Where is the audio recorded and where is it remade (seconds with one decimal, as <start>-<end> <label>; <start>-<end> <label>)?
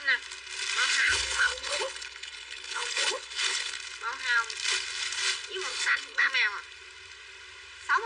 0.0-1.0 recorded; 1.0-3.8 remade; 3.8-5.7 recorded; 5.7-6.3 remade; 6.3-8.1 recorded